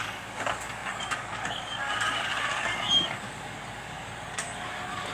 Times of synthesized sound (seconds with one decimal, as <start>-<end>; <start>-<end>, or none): 0.0-5.1